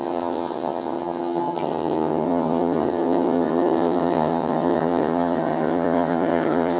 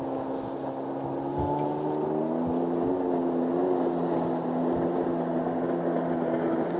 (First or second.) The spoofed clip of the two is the first